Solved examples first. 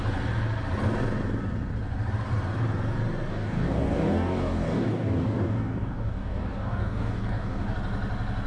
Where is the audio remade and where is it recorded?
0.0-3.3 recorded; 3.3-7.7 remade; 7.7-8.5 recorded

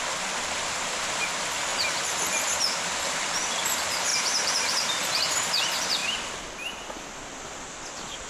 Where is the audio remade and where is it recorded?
0.0-4.1 recorded; 4.1-5.2 remade; 5.2-8.3 recorded

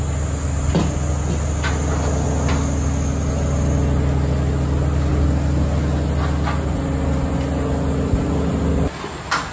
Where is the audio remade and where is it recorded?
0.0-9.5 recorded

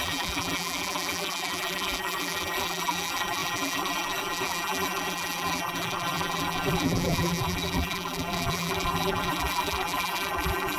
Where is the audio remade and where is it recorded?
0.0-10.8 remade

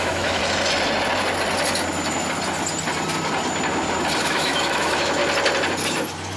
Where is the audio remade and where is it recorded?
0.0-0.4 remade; 0.4-4.2 recorded; 4.2-5.2 remade; 5.2-6.4 recorded